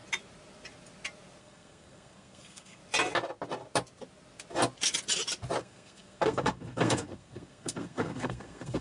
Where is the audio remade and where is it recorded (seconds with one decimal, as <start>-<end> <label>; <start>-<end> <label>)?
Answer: 0.0-1.4 recorded; 1.4-2.8 remade; 2.8-5.6 recorded; 5.6-8.8 remade